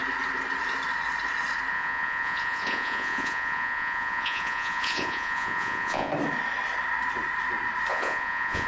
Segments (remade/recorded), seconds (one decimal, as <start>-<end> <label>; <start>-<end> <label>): 0.0-1.7 recorded; 1.7-6.1 remade; 6.1-7.9 recorded; 7.9-8.7 remade